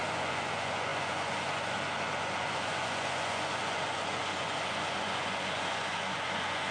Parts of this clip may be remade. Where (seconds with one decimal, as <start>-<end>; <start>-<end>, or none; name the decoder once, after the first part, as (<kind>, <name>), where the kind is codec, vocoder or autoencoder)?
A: 0.0-6.7 (vocoder, Vocos)